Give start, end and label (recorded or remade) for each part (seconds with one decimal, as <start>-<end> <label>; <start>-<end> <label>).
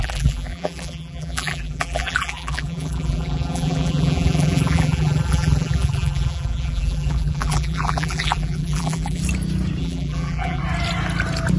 0.0-9.2 remade; 9.2-9.8 recorded; 9.8-10.6 remade; 10.6-11.6 recorded